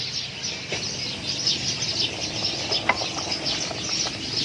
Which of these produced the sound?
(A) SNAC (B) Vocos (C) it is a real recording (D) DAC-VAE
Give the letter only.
C